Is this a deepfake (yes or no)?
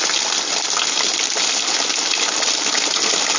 no